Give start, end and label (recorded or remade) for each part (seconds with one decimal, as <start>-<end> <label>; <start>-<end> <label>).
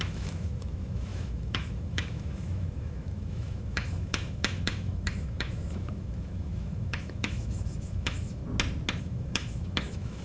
0.0-8.4 remade; 8.4-9.0 recorded; 9.0-10.2 remade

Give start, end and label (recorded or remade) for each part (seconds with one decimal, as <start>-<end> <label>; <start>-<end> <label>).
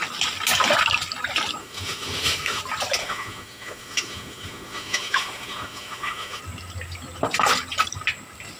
0.0-1.6 recorded; 1.6-2.6 remade; 2.6-3.0 recorded; 3.0-6.4 remade; 6.4-8.6 recorded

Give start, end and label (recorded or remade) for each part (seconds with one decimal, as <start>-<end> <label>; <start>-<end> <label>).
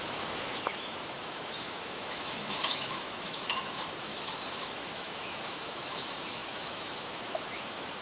0.0-8.0 remade